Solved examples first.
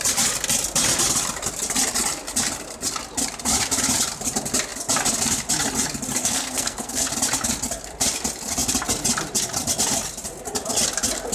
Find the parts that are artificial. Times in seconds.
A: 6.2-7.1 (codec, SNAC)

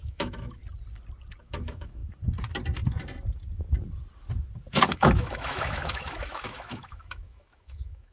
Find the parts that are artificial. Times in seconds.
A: 0.0-0.6 (autoencoder, DAC-VAE); 1.4-2.0; 4.8-8.1

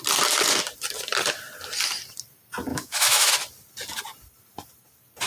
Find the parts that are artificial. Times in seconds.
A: 2.7-3.3 (autoencoder, DAC-VAE)

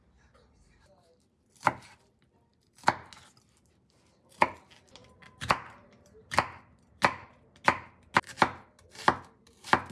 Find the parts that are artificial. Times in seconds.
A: 5.0-6.6 (vocoder, BigVGAN v2)

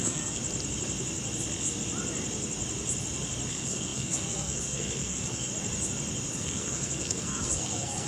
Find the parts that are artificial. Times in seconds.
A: 0.0-0.4 (codec, SNAC); 3.5-5.5; 6.4-8.1

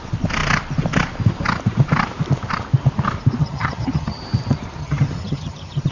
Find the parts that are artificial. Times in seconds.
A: 3.4-4.2 (vocoder, HiFi-GAN); 4.8-5.9